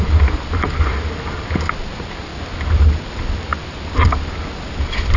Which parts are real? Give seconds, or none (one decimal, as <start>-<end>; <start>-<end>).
0.0-5.2